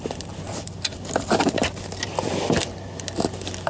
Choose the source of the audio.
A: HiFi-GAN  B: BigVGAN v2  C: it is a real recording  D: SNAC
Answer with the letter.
C